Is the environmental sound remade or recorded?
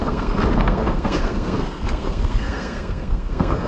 remade